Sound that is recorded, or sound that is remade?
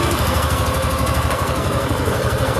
remade